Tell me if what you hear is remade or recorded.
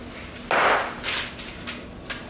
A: recorded